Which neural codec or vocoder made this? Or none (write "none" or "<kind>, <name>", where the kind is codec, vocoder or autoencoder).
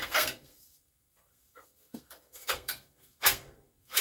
codec, SNAC